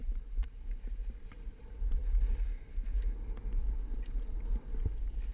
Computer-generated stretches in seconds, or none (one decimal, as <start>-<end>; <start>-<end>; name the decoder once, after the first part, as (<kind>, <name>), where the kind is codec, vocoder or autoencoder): 0.0-1.1 (vocoder, BigVGAN v2)